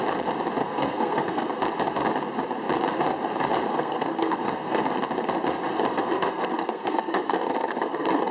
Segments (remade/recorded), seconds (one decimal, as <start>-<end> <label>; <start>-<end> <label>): 0.0-0.6 recorded; 0.6-1.6 remade; 1.6-3.7 recorded; 3.7-4.8 remade; 4.8-5.9 recorded; 5.9-8.3 remade